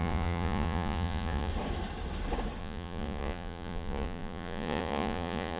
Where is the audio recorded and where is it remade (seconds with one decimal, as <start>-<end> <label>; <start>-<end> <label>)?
0.0-1.5 remade; 1.5-2.6 recorded; 2.6-5.6 remade